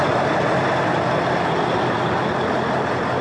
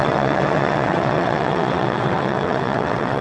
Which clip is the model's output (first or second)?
second